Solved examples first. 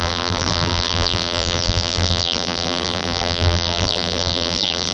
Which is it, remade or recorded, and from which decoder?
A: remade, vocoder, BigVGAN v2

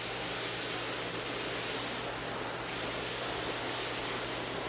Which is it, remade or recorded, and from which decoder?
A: recorded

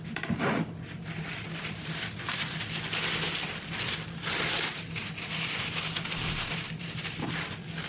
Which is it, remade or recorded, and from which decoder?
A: remade, vocoder, BigVGAN v2